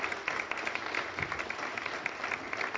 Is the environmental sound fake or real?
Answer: real